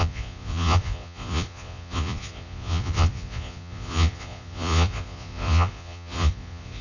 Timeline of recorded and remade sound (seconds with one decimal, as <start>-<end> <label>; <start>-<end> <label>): 0.0-6.8 remade